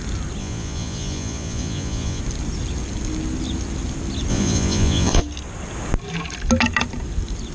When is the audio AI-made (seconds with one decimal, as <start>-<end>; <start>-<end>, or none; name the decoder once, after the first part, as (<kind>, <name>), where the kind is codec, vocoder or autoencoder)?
0.4-2.2 (vocoder, Vocos); 4.3-5.2